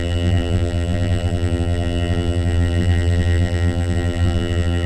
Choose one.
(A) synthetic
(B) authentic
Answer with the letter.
A